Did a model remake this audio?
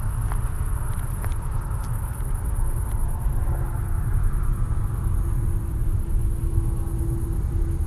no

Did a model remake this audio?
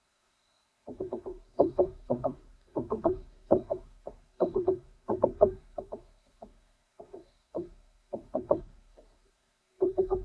yes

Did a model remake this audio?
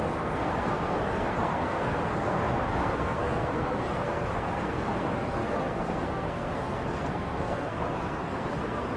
yes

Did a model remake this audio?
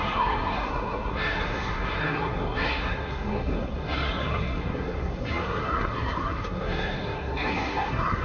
yes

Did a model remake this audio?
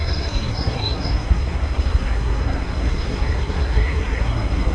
yes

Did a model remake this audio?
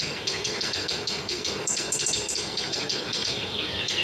yes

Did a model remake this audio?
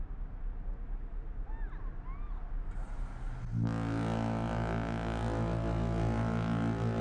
no